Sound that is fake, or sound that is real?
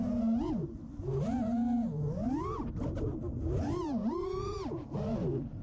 real